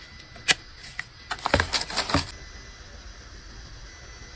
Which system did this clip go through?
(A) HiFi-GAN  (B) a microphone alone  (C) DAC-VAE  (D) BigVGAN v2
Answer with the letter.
B